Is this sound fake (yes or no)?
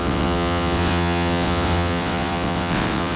yes